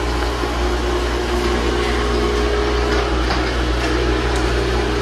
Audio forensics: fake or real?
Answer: real